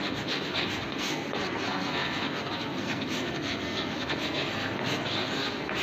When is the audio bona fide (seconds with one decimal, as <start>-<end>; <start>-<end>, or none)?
none